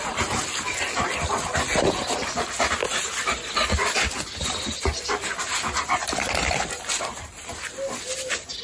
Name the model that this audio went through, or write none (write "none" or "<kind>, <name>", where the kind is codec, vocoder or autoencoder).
none